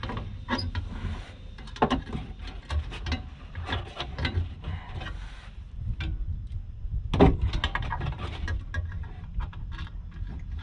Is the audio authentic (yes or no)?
yes